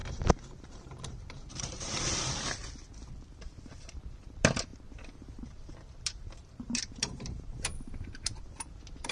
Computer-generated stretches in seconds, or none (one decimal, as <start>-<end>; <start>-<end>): 0.7-2.6; 3.8-4.7; 5.4-9.1